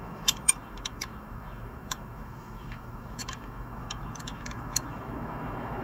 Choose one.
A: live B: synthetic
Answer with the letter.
B